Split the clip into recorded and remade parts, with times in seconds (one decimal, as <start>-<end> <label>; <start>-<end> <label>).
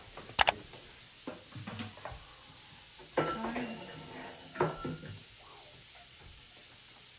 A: 0.0-7.2 recorded